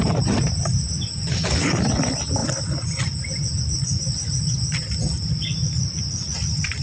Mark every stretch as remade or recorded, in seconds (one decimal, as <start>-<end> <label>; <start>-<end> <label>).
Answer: 0.0-6.8 recorded